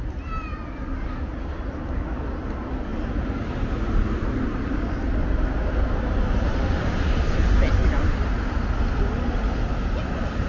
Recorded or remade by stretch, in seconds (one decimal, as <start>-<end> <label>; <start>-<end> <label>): 0.0-10.5 recorded